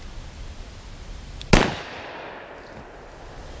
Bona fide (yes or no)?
yes